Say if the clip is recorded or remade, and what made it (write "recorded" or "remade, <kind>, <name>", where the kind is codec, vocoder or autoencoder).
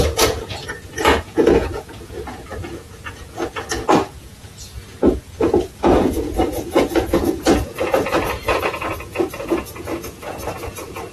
remade, vocoder, Vocos